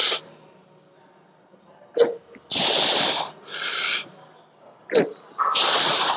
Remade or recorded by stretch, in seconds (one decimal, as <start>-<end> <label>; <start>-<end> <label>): 0.0-0.6 remade; 0.6-4.1 recorded; 4.1-6.2 remade